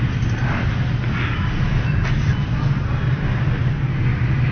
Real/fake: real